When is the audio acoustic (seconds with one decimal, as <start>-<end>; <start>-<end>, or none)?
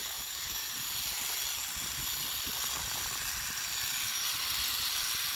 0.7-5.4